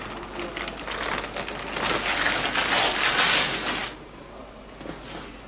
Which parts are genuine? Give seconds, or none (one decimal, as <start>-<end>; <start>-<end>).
0.0-5.5